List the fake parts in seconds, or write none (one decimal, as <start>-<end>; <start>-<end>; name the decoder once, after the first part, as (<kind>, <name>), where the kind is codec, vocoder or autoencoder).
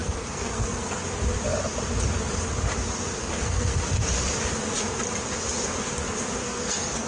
0.0-1.0 (codec, SNAC); 3.2-3.8; 6.4-7.1